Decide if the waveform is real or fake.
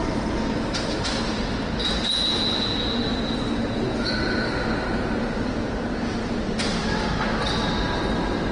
real